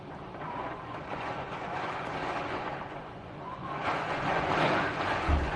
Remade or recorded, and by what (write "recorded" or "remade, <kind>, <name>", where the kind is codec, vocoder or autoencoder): remade, vocoder, Vocos